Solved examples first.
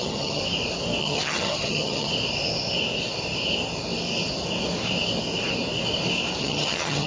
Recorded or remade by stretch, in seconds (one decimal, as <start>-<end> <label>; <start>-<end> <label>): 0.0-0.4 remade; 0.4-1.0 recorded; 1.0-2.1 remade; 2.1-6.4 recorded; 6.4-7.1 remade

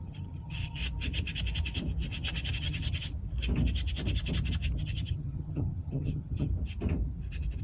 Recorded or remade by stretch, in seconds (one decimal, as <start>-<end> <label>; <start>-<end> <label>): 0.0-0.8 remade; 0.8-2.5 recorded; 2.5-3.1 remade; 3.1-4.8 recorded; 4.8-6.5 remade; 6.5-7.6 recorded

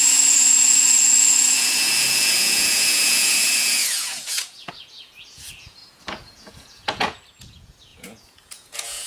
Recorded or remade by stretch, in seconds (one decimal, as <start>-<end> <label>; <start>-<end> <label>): 0.0-9.1 remade

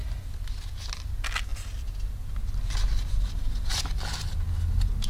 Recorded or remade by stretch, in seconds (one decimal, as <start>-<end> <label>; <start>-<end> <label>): 0.0-5.1 recorded